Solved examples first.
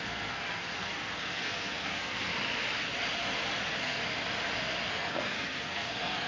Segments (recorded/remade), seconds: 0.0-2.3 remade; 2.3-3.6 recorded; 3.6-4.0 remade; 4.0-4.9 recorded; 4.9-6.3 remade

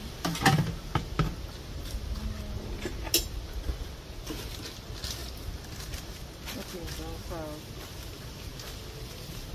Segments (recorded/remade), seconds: 0.0-9.5 recorded

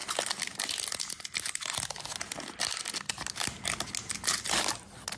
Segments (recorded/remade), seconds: 0.0-5.2 recorded